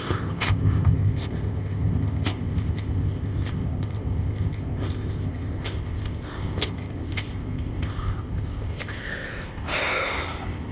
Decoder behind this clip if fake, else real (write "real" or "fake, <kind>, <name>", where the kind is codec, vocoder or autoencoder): fake, codec, ZipCodec